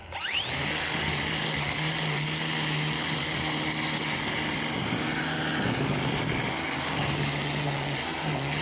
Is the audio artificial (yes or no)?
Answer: no